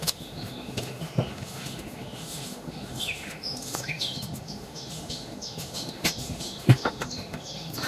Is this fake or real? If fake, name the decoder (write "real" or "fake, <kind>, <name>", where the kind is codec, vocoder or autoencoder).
fake, autoencoder, DAC-VAE